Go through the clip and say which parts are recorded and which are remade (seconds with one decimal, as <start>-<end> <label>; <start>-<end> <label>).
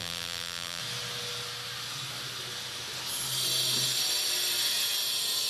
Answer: 0.0-0.8 remade; 0.8-5.5 recorded